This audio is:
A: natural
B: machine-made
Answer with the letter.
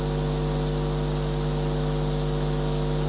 A